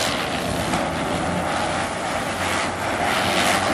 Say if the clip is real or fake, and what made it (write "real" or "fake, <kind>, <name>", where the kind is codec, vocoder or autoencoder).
real